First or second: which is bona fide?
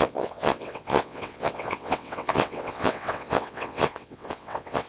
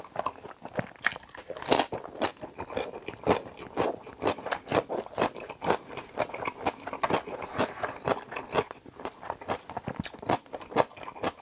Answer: second